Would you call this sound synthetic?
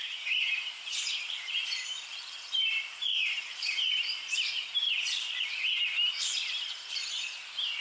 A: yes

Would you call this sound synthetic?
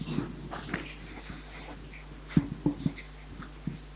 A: no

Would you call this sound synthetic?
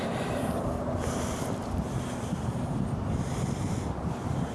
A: yes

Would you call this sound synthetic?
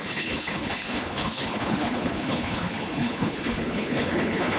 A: yes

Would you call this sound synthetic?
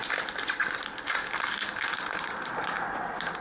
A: no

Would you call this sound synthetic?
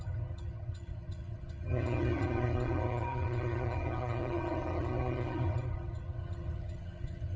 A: yes